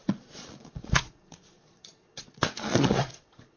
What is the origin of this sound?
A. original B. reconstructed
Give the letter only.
B